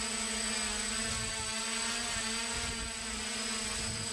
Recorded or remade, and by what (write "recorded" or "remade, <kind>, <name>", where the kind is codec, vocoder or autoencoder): recorded